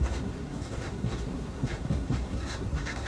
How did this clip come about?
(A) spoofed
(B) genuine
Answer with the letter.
A